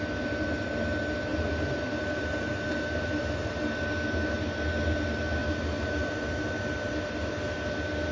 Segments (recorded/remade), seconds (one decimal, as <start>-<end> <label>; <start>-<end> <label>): 0.0-1.3 recorded; 1.3-3.5 remade; 3.5-8.1 recorded